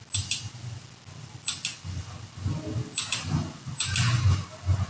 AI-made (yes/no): no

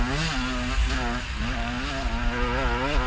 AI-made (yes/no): no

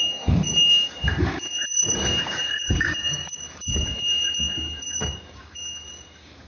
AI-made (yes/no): yes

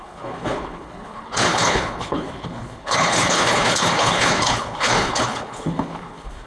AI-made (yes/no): yes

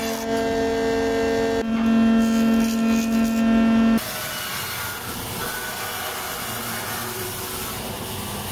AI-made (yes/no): no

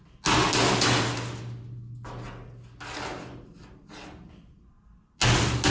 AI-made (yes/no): no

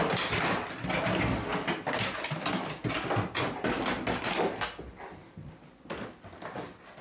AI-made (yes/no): no